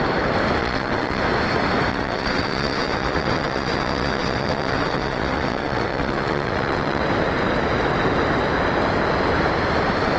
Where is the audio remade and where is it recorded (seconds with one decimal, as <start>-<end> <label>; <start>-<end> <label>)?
0.0-0.6 recorded; 0.6-1.2 remade; 1.2-1.9 recorded; 1.9-7.0 remade; 7.0-10.2 recorded